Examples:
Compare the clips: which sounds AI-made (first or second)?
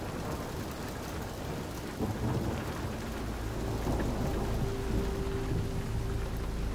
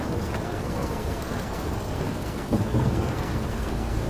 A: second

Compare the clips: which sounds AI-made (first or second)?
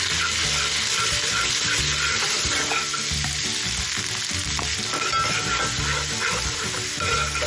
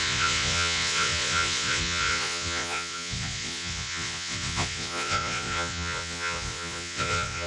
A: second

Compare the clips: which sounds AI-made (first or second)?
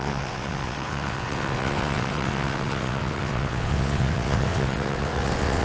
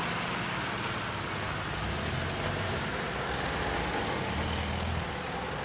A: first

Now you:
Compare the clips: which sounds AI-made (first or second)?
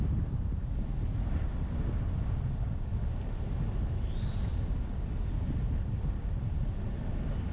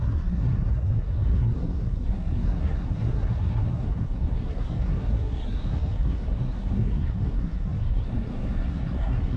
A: second